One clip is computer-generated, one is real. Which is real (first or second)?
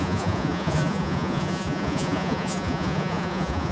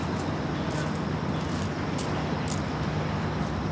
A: second